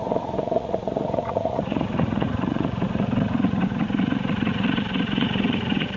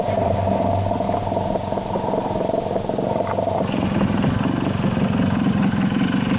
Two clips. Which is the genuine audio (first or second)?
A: second